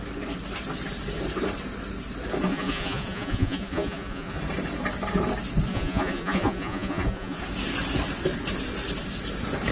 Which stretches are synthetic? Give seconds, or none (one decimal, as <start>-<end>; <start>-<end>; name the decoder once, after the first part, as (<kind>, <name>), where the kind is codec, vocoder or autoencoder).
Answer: 2.5-4.4 (vocoder, Vocos); 5.7-7.4